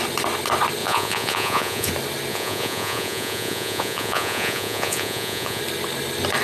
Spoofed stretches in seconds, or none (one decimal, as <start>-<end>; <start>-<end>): 0.8-1.9; 2.3-5.6